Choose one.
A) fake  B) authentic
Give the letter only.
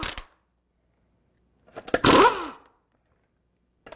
B